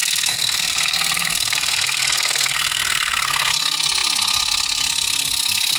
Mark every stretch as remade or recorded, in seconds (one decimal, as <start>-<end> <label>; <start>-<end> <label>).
0.0-3.5 remade; 3.5-5.8 recorded